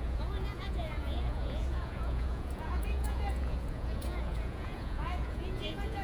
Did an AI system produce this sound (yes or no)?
yes